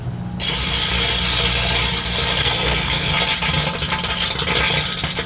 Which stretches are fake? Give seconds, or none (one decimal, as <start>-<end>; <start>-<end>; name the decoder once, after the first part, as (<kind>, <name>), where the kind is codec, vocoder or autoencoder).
2.4-3.1 (codec, SNAC)